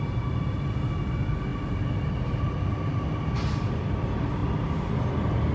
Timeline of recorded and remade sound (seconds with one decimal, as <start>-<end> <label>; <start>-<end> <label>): 0.0-5.5 recorded